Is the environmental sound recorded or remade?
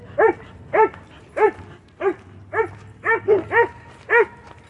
recorded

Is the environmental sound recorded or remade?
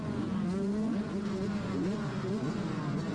remade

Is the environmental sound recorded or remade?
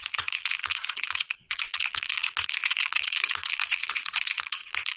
remade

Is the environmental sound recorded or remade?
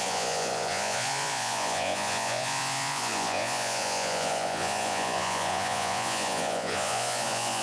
remade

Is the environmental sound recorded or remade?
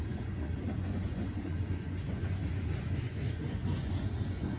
remade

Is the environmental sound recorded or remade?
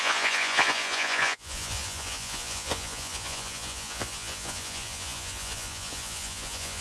remade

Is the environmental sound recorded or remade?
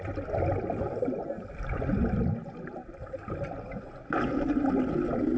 recorded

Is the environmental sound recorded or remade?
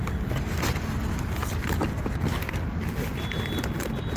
recorded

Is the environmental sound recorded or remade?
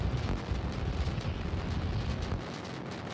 recorded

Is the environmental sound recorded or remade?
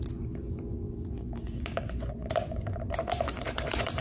remade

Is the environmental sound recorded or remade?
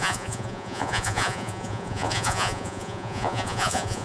remade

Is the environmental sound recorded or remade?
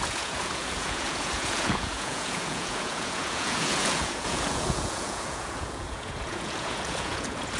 remade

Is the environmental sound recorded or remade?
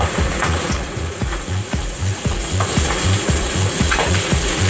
remade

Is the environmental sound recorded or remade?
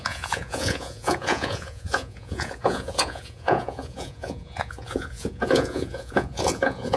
remade